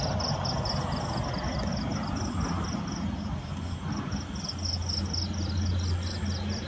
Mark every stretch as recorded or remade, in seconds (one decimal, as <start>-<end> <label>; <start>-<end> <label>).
0.0-6.7 recorded